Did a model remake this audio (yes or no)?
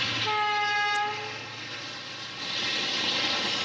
no